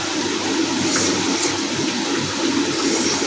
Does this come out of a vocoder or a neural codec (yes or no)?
yes